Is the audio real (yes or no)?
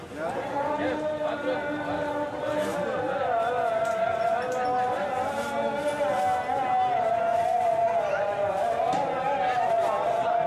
yes